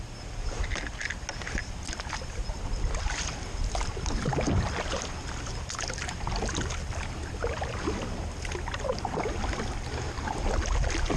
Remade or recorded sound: recorded